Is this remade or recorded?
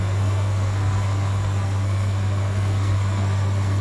remade